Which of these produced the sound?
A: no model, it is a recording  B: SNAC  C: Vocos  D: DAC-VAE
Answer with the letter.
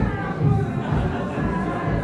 A